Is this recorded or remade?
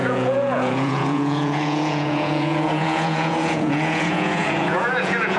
remade